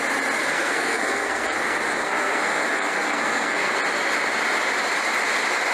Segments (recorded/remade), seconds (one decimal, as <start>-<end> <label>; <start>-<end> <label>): 0.0-0.4 recorded; 0.4-3.8 remade; 3.8-5.7 recorded